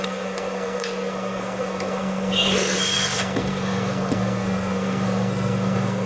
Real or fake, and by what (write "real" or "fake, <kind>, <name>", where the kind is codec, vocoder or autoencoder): fake, codec, SNAC